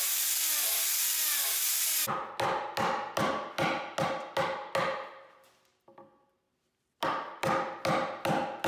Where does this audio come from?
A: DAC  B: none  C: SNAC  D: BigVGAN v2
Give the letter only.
B